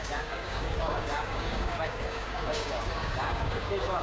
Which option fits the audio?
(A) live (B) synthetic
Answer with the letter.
B